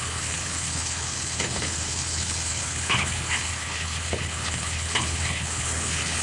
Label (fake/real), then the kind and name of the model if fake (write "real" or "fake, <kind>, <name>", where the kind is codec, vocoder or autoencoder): fake, codec, HILCodec